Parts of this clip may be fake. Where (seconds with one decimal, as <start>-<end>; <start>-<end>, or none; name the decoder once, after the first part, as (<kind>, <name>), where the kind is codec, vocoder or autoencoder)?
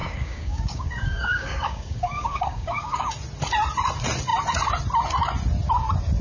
0.0-3.1 (codec, DAC)